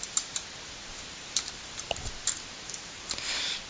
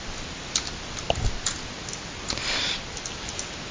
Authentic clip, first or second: second